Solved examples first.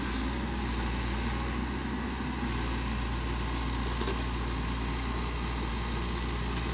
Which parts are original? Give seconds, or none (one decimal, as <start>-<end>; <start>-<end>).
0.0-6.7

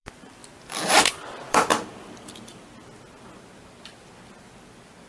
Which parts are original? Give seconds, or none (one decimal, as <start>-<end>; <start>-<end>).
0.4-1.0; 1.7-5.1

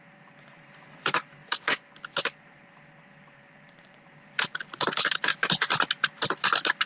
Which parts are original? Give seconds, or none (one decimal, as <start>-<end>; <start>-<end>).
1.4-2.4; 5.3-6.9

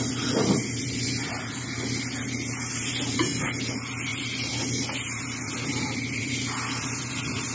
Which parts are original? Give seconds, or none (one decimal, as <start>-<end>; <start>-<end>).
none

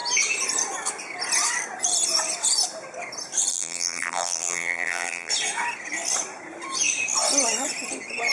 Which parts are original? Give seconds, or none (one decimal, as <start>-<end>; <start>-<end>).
0.0-3.5; 5.3-8.3

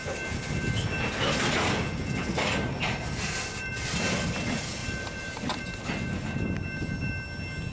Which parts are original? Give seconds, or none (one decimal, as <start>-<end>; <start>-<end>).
0.0-4.8; 5.6-7.7

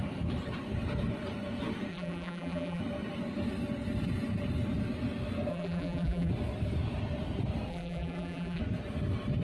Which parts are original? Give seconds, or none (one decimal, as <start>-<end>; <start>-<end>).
0.0-1.9; 2.8-5.5; 6.3-7.7; 8.6-9.4

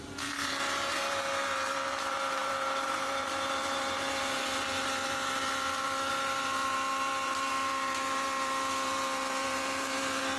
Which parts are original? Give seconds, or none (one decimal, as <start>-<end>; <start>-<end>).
none